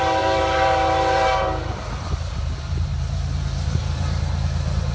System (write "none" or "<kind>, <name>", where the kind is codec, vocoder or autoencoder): vocoder, BigVGAN v2